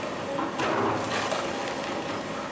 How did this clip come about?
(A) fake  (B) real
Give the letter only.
B